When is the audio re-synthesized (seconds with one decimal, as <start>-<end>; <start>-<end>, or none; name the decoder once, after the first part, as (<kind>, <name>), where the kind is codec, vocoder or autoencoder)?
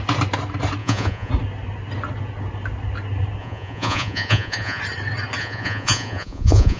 0.8-1.3 (vocoder, Vocos); 3.4-4.8; 5.4-6.8